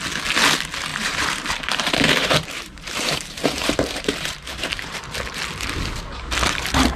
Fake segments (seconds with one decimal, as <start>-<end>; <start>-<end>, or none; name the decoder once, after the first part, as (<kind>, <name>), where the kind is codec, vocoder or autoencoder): 0.9-5.1 (vocoder, BigVGAN v2)